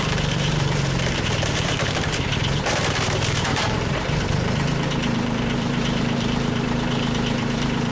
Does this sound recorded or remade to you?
remade